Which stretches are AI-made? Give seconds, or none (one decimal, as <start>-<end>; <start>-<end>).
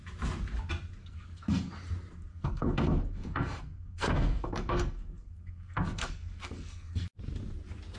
1.0-1.7; 2.3-7.1